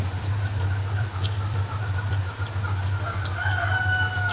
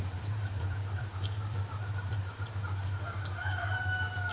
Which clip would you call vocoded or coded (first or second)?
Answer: second